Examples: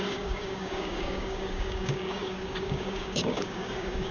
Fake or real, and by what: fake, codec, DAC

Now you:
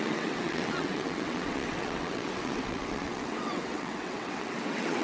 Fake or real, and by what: fake, vocoder, WaveNeXt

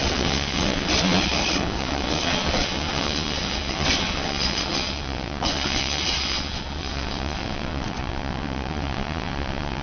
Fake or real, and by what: fake, vocoder, WaveNeXt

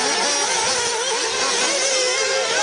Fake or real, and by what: real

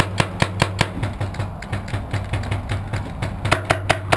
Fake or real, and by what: real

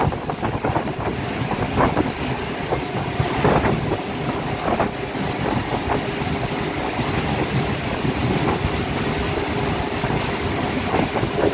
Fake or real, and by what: real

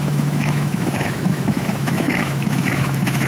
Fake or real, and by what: fake, autoencoder, DAC-VAE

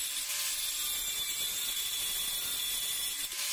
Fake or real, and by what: real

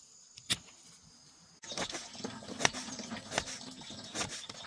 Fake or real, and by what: real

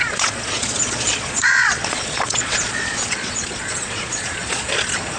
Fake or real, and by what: fake, vocoder, Vocos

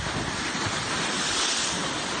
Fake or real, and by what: real